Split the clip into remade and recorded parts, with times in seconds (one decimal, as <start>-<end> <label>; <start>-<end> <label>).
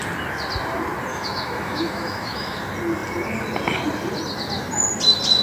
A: 0.0-1.1 recorded; 1.1-2.6 remade; 2.6-5.4 recorded